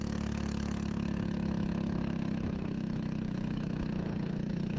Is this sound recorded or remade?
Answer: remade